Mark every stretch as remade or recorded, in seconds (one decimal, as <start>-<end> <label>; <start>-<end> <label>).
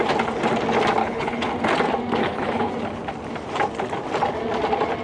0.0-1.0 recorded; 1.0-1.5 remade; 1.5-2.2 recorded; 2.2-2.7 remade; 2.7-5.0 recorded